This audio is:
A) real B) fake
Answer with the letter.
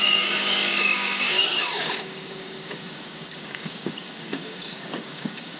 B